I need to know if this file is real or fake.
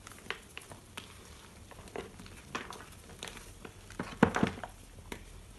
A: real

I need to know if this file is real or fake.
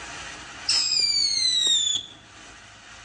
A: real